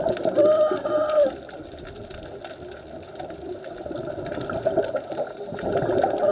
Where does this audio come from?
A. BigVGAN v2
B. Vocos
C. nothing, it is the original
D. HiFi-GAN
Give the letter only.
C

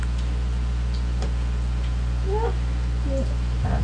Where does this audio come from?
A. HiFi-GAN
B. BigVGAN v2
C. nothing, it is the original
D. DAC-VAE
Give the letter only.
C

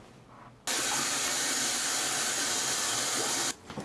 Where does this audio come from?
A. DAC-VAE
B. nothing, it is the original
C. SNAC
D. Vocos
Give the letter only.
B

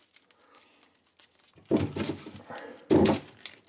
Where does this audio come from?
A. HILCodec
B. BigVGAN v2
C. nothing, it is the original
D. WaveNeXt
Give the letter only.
C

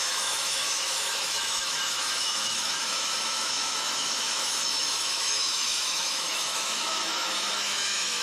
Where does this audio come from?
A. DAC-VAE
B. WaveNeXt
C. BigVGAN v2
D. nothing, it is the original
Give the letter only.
A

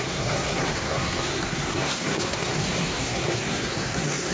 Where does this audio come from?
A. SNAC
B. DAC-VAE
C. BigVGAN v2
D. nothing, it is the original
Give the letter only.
A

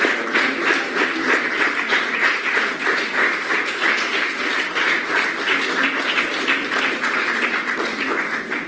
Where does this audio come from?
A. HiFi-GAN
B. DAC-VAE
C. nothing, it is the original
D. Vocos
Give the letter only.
C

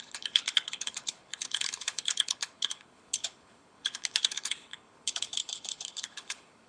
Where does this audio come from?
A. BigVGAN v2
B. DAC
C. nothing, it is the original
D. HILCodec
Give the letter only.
D